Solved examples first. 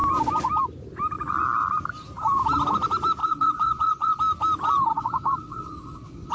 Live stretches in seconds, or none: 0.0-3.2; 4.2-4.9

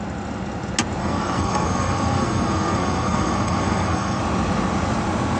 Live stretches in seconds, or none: 0.0-1.0; 4.2-5.4

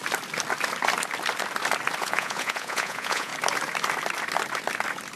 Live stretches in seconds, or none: 0.0-2.0; 3.3-5.2